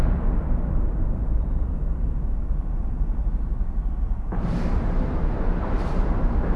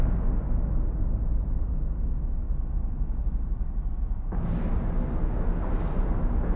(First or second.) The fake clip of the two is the first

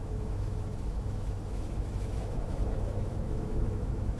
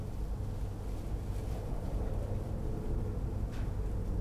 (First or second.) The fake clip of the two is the first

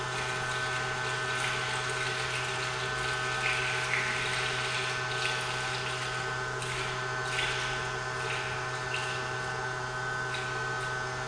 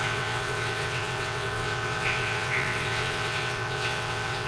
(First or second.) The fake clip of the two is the second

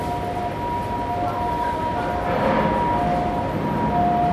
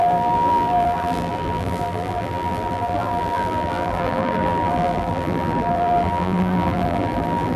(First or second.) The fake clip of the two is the second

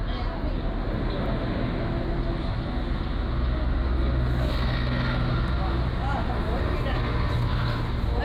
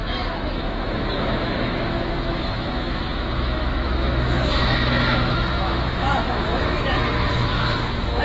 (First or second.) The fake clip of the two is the second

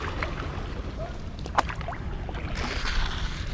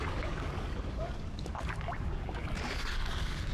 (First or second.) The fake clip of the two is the second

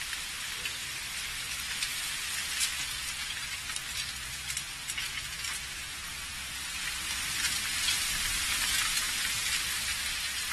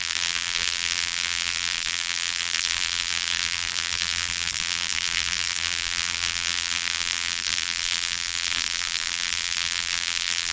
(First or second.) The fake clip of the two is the second